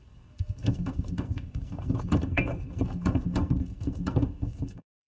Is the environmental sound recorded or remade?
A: remade